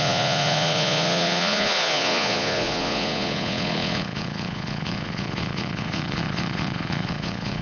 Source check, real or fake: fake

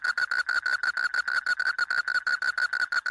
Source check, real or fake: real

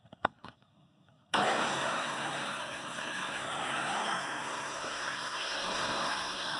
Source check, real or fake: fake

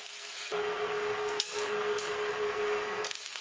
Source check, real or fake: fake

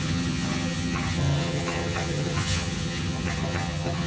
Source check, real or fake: fake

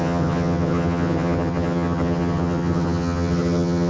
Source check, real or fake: fake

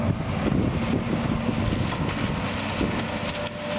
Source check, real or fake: real